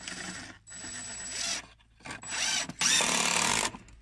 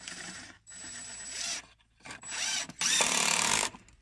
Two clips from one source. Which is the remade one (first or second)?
second